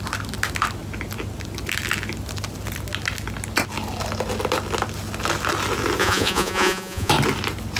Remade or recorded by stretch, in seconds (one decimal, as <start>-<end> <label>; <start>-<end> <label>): 0.0-6.0 recorded; 6.0-7.1 remade; 7.1-7.8 recorded